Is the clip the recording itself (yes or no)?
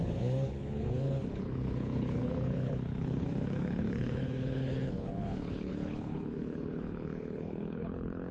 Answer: no